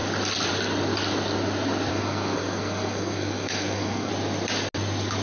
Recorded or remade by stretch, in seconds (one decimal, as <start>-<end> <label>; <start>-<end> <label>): 0.0-1.9 recorded; 1.9-4.1 remade; 4.1-5.2 recorded

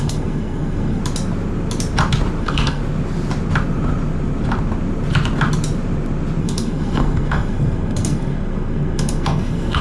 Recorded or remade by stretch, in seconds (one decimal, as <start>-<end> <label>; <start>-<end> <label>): 0.0-1.0 remade; 1.0-2.4 recorded; 2.4-2.8 remade; 2.8-6.4 recorded; 6.4-9.8 remade

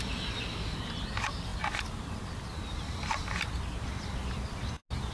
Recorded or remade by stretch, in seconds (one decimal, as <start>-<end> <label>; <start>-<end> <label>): 0.0-5.1 recorded

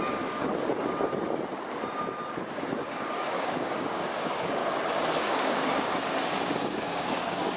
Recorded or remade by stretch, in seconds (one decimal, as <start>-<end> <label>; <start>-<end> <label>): 0.0-0.5 remade; 0.5-2.5 recorded; 2.5-4.6 remade; 4.6-5.2 recorded; 5.2-7.6 remade

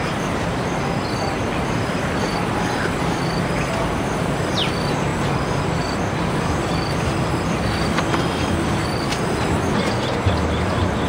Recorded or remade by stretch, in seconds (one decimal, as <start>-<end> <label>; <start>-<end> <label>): 0.0-11.1 recorded

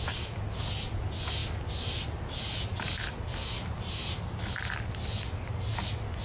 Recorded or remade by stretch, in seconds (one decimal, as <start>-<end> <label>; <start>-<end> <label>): 0.0-6.2 recorded

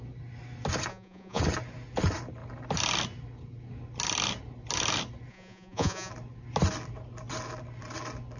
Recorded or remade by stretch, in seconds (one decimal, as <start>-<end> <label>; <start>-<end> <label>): 0.0-0.9 recorded; 0.9-1.4 remade; 1.4-5.3 recorded; 5.3-6.1 remade; 6.1-8.4 recorded